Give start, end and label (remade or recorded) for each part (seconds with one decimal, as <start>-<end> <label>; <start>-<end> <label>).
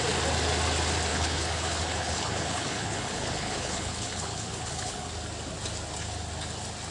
0.0-1.1 recorded; 1.1-5.1 remade; 5.1-6.9 recorded